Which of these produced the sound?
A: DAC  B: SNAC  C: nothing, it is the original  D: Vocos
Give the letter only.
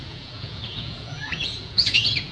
D